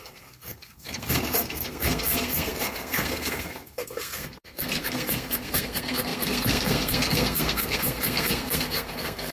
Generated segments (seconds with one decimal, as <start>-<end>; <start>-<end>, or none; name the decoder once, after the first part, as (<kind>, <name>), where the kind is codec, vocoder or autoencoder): 0.0-9.3 (codec, SNAC)